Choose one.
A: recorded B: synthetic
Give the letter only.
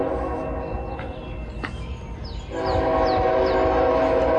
A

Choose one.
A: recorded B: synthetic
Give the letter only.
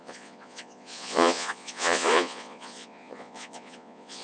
B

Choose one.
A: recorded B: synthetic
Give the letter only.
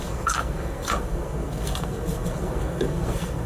B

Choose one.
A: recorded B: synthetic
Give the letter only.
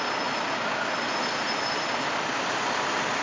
A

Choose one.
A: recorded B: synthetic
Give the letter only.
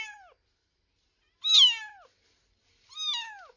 A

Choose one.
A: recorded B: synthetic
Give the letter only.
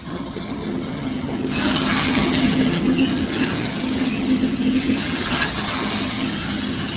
B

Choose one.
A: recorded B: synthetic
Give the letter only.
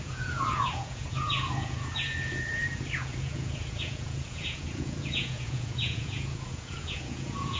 B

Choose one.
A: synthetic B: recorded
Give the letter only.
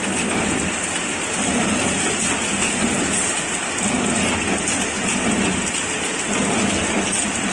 B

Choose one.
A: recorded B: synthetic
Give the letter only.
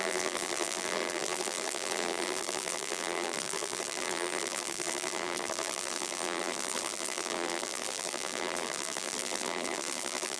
B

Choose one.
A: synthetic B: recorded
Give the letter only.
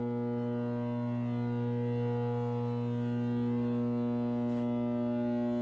B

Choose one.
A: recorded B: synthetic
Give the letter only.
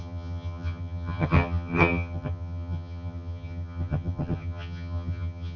B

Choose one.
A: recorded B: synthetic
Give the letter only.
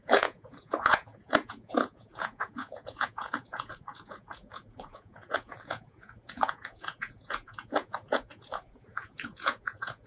B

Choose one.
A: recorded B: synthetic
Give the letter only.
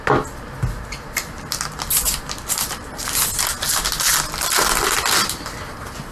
A